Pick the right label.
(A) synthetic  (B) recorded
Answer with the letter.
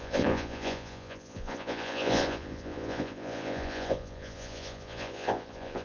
A